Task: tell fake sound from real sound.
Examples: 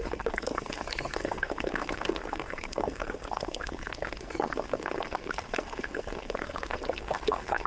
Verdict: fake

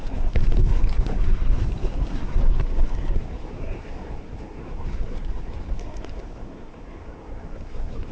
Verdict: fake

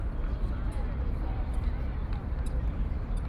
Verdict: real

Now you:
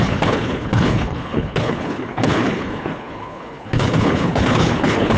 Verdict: fake